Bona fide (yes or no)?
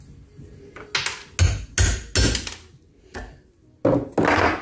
yes